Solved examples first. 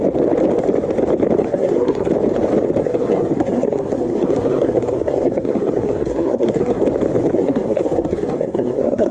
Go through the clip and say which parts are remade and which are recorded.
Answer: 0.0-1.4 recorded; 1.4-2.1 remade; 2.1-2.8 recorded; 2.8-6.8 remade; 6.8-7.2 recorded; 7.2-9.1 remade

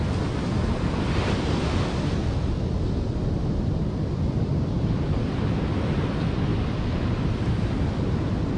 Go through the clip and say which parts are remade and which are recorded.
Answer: 0.0-8.6 recorded

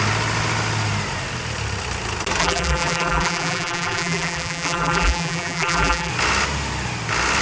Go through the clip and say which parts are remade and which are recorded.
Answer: 0.0-2.4 recorded; 2.4-6.1 remade; 6.1-7.4 recorded

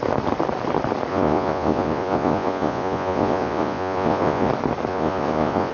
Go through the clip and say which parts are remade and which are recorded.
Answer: 0.0-1.1 recorded; 1.1-4.5 remade; 4.5-4.9 recorded; 4.9-5.7 remade

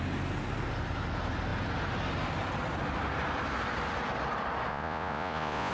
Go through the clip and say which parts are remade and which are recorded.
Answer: 0.0-4.7 recorded; 4.7-5.7 remade